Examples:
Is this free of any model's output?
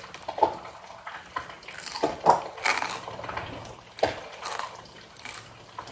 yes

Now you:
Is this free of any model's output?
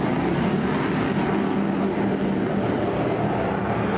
yes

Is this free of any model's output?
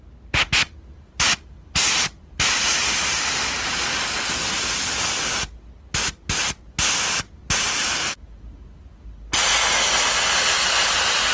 yes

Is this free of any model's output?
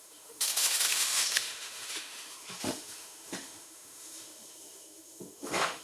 no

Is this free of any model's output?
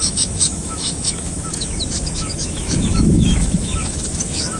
no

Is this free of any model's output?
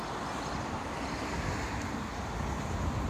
yes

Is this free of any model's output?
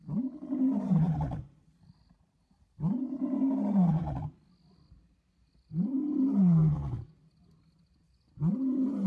yes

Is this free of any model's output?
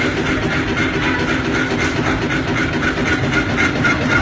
yes